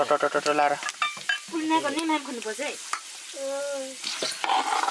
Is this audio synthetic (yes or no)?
no